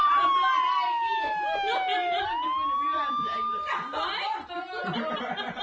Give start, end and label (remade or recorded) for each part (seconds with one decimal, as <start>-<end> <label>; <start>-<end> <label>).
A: 0.0-5.6 recorded